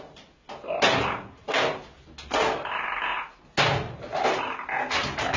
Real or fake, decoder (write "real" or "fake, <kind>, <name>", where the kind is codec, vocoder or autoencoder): real